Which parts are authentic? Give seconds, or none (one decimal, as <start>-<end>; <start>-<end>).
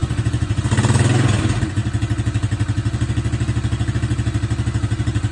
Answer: 0.6-5.3